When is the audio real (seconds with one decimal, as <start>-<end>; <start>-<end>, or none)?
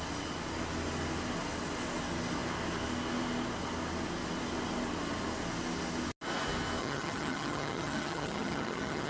0.0-6.8